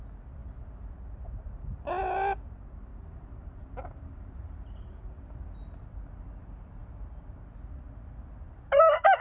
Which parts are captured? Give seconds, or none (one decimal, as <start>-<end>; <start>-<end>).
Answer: 0.0-0.4; 0.9-2.9; 4.9-9.2